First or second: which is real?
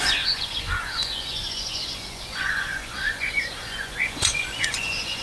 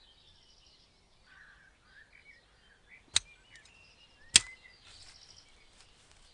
second